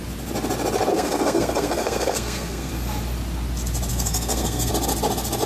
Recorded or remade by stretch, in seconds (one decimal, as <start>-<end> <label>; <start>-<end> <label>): 0.0-0.9 recorded; 0.9-2.7 remade; 2.7-3.9 recorded; 3.9-4.7 remade; 4.7-5.5 recorded